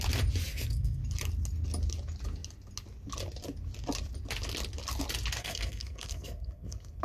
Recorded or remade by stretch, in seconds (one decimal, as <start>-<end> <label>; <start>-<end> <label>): 0.0-0.5 recorded; 0.5-1.0 remade; 1.0-5.4 recorded; 5.4-7.0 remade